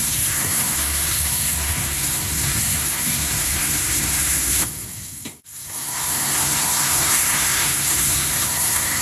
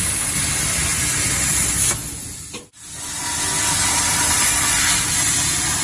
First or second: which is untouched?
second